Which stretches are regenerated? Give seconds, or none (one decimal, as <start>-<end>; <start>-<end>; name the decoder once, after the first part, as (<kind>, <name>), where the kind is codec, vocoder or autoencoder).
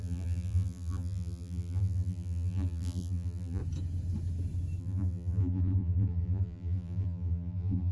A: 0.0-3.6 (vocoder, BigVGAN v2); 4.8-7.9